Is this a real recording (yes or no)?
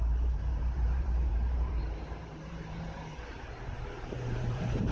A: no